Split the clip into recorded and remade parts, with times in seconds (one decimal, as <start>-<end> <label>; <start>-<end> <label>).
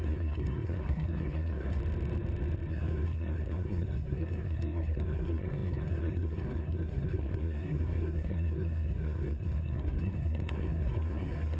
0.0-1.8 remade; 1.8-2.7 recorded; 2.7-11.6 remade